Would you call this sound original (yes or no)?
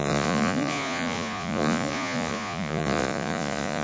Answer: no